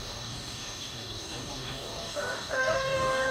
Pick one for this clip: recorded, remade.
remade